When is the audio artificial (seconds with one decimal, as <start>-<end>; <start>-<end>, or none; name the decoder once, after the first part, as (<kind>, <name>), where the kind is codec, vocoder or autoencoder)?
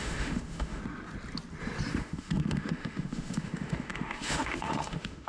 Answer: 0.0-0.8 (autoencoder, DAC-VAE); 1.9-5.3